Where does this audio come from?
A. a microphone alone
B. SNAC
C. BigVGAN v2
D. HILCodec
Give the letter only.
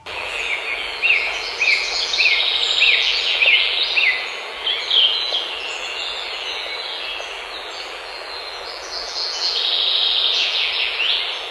C